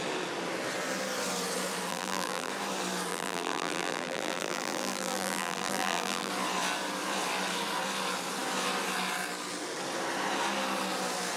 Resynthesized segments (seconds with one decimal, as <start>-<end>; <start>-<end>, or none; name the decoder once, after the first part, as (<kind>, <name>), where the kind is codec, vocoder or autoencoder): 1.9-2.5 (vocoder, BigVGAN v2); 3.1-6.3